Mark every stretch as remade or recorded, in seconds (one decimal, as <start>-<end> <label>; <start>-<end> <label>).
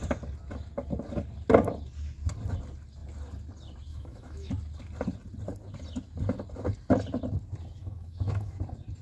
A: 0.0-3.9 recorded; 3.9-4.5 remade; 4.5-7.8 recorded; 7.8-8.5 remade; 8.5-9.0 recorded